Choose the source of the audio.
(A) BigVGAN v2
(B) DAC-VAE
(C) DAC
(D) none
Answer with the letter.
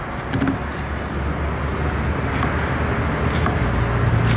D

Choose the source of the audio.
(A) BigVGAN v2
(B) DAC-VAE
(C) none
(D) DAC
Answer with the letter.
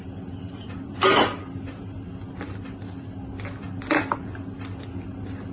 C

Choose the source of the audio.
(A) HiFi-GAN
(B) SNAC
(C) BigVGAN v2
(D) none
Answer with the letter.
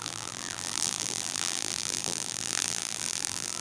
C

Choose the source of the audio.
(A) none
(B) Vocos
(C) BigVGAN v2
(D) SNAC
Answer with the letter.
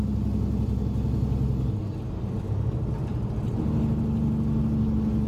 A